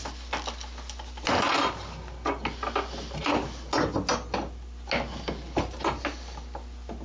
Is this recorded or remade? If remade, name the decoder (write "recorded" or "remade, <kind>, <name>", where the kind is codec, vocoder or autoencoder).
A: recorded